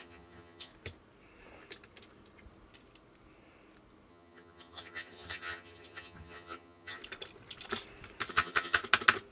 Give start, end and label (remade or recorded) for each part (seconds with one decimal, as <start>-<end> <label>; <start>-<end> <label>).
0.0-0.7 remade; 0.7-4.1 recorded; 4.1-7.0 remade; 7.0-8.3 recorded; 8.3-8.8 remade; 8.8-9.3 recorded